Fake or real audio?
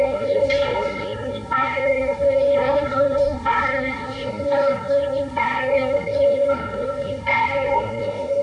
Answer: fake